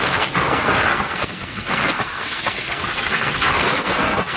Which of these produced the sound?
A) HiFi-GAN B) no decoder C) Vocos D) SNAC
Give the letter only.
D